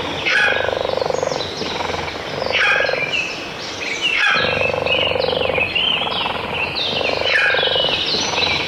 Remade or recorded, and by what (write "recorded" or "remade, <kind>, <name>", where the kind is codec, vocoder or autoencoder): recorded